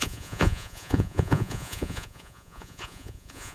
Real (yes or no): no